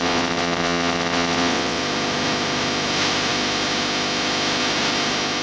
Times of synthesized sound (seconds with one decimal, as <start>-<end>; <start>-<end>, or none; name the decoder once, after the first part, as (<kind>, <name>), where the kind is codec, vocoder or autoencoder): 0.0-1.8 (vocoder, WaveNeXt)